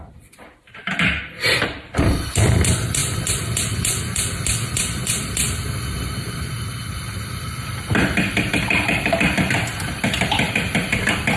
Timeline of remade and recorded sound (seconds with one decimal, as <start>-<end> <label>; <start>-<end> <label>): 0.0-11.4 remade